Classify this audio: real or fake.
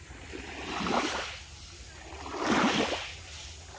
real